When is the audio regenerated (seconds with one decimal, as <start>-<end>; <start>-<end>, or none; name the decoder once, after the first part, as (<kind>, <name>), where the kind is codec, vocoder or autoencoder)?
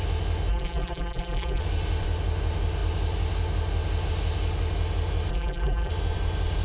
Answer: 0.5-1.6 (vocoder, BigVGAN v2); 5.3-5.9